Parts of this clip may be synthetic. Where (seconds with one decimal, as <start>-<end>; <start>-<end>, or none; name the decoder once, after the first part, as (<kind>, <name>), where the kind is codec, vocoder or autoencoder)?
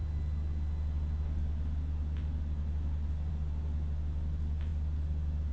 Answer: none